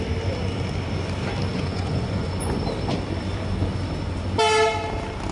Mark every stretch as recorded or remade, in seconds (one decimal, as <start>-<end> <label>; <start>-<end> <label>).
0.0-1.5 recorded; 1.5-2.6 remade; 2.6-5.3 recorded